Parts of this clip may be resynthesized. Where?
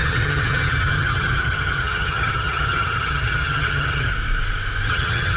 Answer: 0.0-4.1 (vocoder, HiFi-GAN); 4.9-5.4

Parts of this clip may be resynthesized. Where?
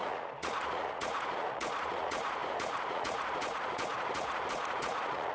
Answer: 0.0-5.3 (vocoder, Vocos)